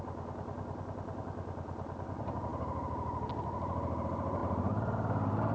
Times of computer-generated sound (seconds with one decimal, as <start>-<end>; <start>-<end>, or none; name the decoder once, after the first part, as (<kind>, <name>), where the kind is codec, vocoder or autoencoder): none